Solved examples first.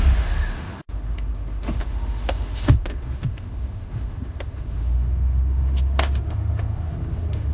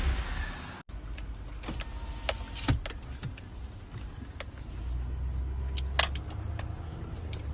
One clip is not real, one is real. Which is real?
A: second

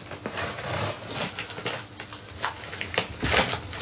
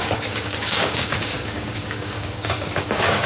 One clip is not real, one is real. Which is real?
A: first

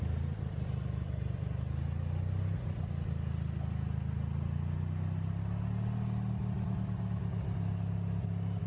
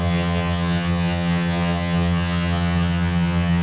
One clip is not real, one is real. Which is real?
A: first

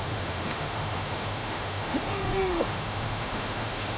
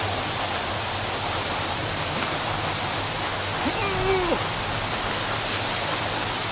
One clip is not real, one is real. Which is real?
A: second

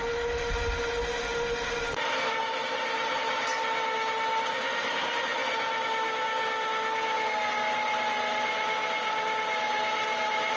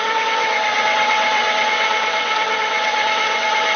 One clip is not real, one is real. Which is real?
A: first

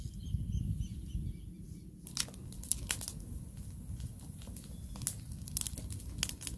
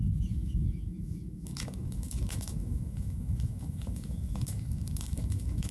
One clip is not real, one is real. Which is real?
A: first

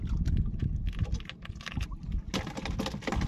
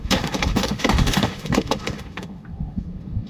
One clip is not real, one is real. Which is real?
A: first